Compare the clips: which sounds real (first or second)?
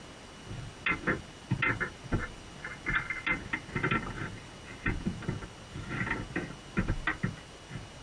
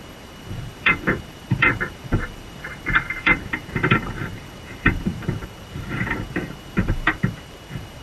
first